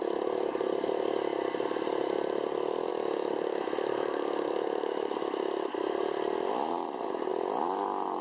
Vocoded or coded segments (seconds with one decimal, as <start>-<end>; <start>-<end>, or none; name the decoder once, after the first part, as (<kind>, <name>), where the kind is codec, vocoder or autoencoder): 2.9-5.7 (autoencoder, DAC-VAE)